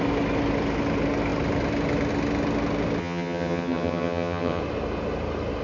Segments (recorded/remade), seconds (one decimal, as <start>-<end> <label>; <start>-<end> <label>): 0.0-3.0 recorded; 3.0-4.6 remade; 4.6-5.6 recorded